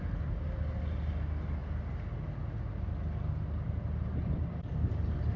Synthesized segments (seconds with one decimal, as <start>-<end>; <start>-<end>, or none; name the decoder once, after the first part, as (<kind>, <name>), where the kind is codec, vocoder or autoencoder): none